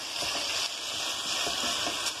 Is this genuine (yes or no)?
yes